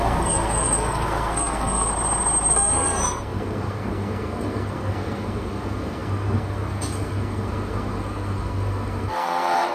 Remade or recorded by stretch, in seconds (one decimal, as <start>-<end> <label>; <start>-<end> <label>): 0.0-1.9 remade; 1.9-2.5 recorded; 2.5-9.7 remade